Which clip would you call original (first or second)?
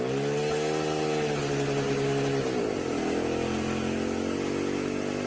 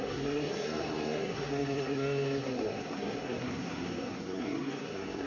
first